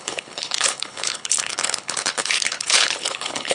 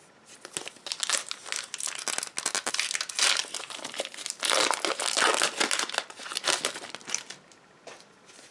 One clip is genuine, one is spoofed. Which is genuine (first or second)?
second